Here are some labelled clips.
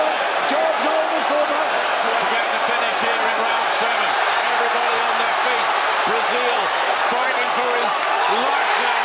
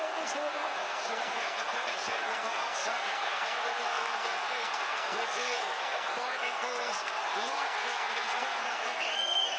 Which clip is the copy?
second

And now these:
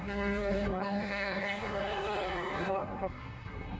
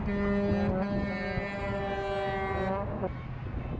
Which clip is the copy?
first